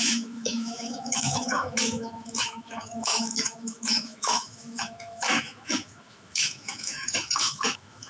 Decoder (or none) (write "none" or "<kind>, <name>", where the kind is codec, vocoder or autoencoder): autoencoder, DAC-VAE